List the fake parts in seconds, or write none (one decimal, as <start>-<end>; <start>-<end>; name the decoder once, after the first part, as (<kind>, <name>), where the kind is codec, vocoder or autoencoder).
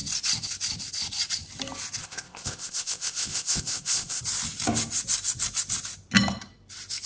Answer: 2.0-4.2 (codec, ZipCodec)